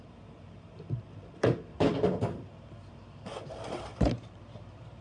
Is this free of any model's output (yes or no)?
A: no